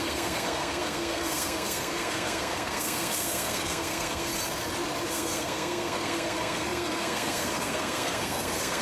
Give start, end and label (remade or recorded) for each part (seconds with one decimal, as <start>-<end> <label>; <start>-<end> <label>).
0.0-4.3 remade; 4.3-5.1 recorded; 5.1-8.8 remade